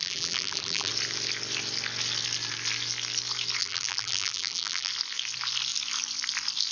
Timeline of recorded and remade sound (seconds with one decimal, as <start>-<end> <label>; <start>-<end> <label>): 0.0-0.9 remade; 0.9-3.6 recorded; 3.6-4.9 remade; 4.9-6.7 recorded